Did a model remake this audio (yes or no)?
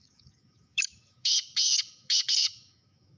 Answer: yes